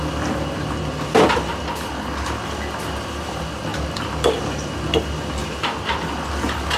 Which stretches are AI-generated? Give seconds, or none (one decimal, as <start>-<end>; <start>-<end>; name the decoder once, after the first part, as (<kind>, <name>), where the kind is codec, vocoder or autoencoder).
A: 3.7-4.4 (vocoder, BigVGAN v2); 5.4-6.2